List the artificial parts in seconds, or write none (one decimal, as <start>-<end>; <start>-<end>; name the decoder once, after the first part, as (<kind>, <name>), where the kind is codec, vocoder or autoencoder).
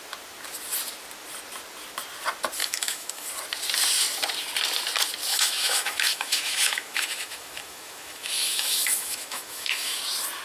2.6-3.3 (autoencoder, DAC-VAE); 5.3-10.0